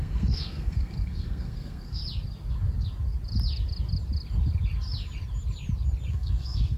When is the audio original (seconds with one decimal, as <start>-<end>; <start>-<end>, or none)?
2.0-6.1